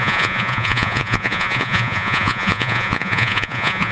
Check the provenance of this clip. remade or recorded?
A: remade